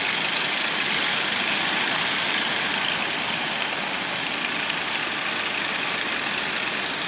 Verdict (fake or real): real